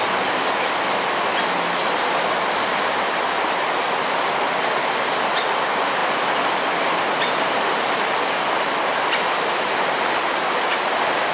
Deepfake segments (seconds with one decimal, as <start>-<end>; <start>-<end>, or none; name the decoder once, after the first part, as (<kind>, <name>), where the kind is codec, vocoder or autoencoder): none